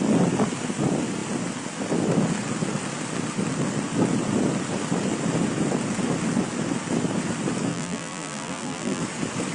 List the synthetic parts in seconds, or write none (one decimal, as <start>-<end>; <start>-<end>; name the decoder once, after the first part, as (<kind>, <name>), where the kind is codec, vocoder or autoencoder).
7.7-9.0 (vocoder, BigVGAN v2)